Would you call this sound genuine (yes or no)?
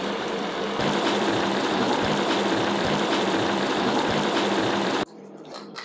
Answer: no